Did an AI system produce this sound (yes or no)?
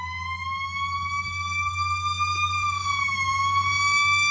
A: yes